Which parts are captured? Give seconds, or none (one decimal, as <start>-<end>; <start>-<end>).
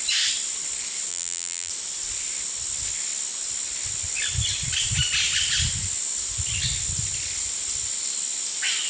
0.0-1.1; 1.7-8.9